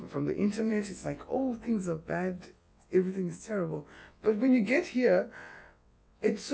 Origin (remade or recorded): remade